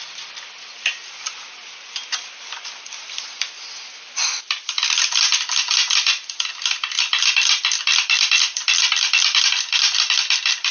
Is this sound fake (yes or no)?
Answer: yes